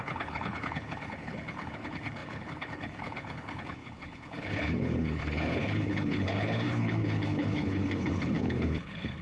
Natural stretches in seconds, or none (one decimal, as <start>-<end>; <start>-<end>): none